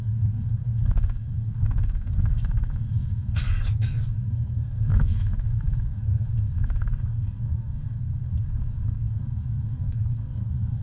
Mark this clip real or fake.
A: fake